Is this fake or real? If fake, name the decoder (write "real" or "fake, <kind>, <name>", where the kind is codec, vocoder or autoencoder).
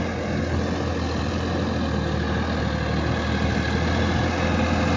real